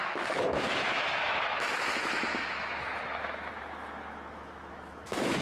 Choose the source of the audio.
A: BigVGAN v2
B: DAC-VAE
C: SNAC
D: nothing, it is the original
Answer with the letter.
B